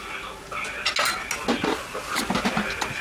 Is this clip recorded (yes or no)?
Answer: yes